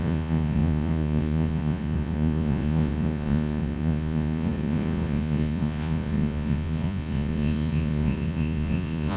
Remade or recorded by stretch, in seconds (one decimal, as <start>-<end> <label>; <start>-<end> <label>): 0.0-9.2 remade